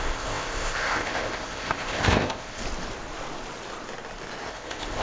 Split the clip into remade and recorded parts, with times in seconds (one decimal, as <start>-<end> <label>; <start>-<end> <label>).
0.0-2.6 remade; 2.6-4.5 recorded; 4.5-5.0 remade

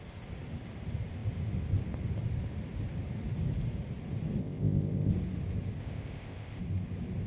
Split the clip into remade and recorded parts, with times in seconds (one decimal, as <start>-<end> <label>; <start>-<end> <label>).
0.0-4.4 recorded; 4.4-5.1 remade; 5.1-5.8 recorded; 5.8-6.6 remade; 6.6-7.3 recorded

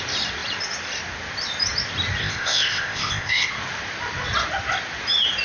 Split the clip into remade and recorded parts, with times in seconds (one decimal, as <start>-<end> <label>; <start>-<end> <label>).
0.0-2.2 recorded; 2.2-3.5 remade; 3.5-5.4 recorded

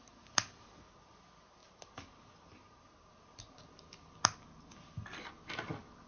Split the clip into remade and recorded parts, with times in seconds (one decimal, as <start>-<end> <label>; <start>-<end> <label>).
0.0-6.1 recorded